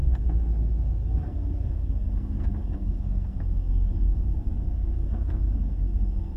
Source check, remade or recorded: remade